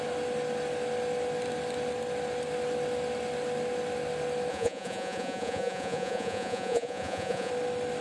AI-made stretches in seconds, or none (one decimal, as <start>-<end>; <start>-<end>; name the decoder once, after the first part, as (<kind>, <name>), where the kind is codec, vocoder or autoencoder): 4.5-7.5 (vocoder, Vocos)